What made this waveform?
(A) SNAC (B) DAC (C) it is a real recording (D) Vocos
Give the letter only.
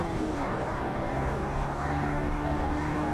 B